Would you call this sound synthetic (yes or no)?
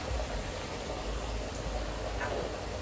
no